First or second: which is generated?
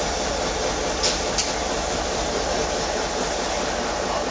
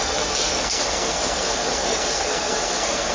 second